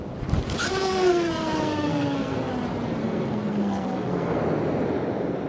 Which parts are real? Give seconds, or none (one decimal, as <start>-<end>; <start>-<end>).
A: 0.0-0.8; 2.5-3.0; 4.4-5.5